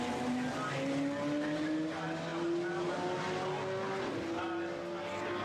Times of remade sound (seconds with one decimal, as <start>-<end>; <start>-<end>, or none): none